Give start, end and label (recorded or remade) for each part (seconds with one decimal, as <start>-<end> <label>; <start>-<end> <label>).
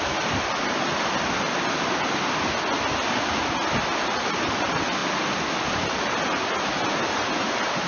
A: 0.0-7.9 recorded